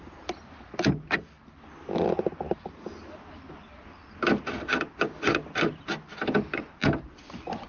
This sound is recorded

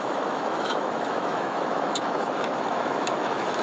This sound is remade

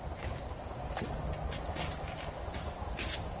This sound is recorded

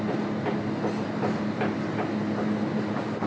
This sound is recorded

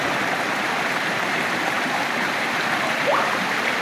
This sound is remade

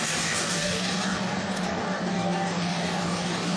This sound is remade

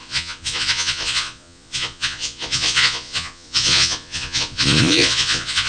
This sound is remade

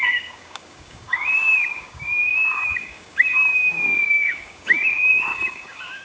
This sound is remade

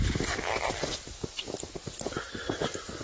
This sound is recorded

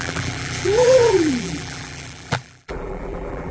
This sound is remade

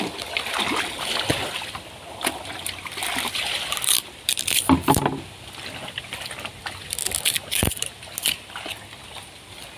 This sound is recorded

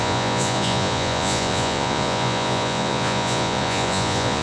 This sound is remade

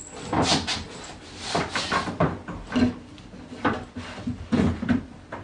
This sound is recorded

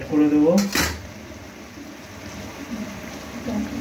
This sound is recorded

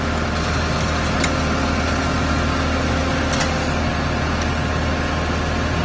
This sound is recorded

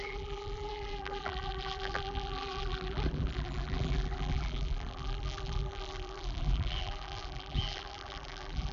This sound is remade